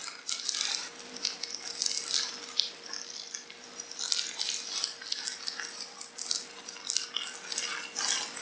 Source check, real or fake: real